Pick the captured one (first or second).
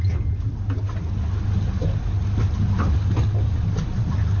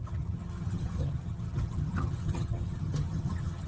first